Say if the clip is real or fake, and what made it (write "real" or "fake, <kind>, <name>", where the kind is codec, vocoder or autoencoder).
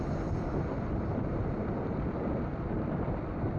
fake, vocoder, BigVGAN v2